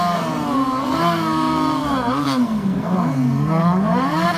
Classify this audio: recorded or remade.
remade